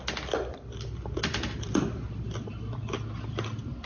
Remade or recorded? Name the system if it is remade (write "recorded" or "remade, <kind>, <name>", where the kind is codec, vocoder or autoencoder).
recorded